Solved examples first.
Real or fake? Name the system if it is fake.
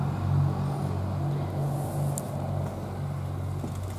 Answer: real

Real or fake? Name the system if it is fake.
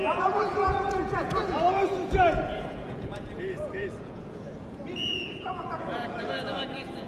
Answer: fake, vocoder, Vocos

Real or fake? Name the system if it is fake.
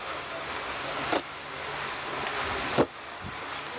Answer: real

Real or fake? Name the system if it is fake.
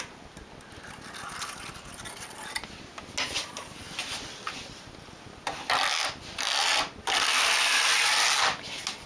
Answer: real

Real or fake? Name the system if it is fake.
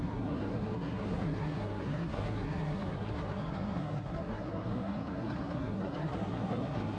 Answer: fake, codec, SNAC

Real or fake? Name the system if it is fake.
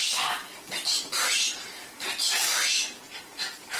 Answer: real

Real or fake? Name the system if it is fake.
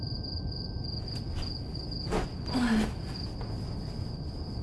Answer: real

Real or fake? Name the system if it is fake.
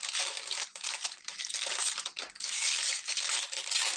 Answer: fake, codec, DAC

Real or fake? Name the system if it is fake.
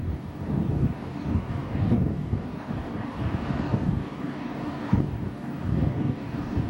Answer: fake, codec, DAC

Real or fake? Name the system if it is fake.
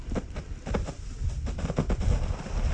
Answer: real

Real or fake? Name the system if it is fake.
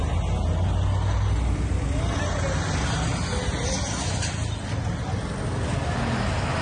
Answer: real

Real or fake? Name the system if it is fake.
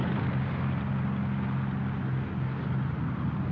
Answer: real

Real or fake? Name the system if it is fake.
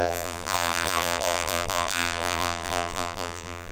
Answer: fake, vocoder, BigVGAN v2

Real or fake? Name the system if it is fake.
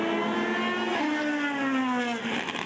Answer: real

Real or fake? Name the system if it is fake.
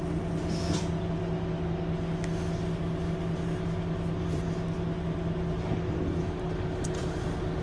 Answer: real